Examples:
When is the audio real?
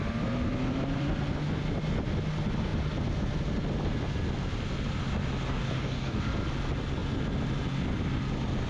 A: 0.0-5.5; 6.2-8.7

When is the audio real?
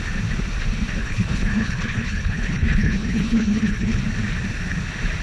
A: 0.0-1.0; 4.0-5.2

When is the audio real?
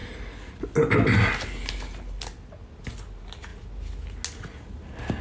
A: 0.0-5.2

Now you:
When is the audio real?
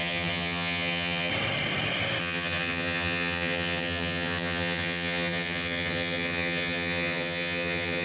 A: 1.3-2.2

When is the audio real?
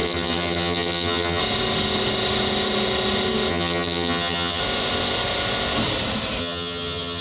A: 1.4-3.5; 4.6-6.4